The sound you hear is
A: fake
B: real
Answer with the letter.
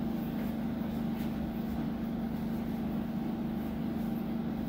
B